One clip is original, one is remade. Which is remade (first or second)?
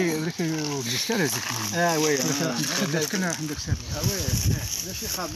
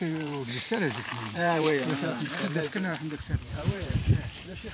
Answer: second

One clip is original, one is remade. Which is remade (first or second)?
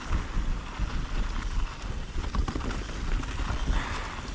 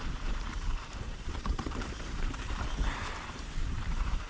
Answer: second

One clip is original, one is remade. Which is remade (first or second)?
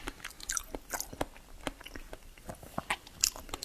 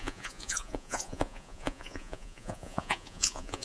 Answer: second